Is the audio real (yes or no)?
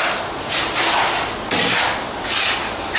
yes